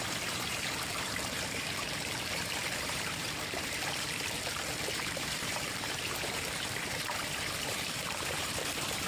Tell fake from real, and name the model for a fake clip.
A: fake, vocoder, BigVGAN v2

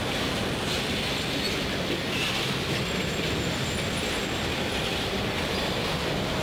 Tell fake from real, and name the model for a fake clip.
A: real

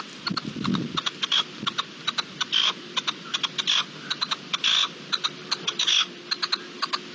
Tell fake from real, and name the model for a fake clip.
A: real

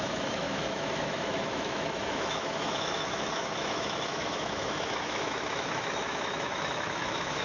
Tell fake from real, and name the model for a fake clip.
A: fake, autoencoder, DAC-VAE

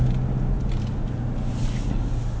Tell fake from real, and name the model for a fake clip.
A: real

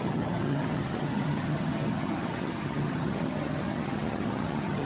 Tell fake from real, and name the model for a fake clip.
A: fake, vocoder, HiFi-GAN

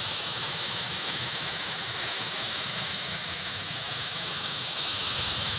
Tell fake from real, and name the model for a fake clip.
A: fake, autoencoder, DAC-VAE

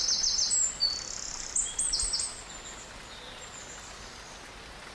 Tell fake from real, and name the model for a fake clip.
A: real